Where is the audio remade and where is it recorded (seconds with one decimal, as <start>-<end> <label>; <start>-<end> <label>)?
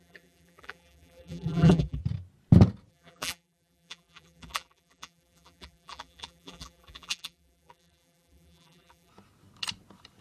0.0-2.0 remade; 2.0-2.9 recorded; 2.9-9.1 remade; 9.1-10.2 recorded